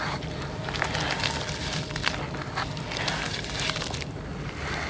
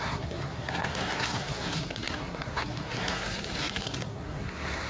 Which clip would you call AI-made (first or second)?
second